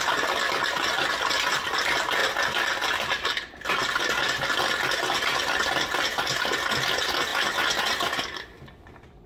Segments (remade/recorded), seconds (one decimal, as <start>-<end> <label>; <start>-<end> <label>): 0.0-9.3 recorded